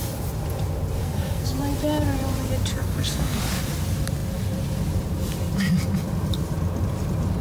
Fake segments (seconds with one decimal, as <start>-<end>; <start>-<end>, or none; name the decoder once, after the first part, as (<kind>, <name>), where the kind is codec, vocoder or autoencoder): 1.0-1.6 (codec, SNAC); 2.7-3.4